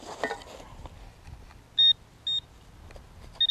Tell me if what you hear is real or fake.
real